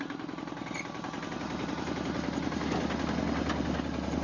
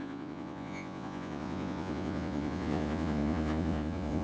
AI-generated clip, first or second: second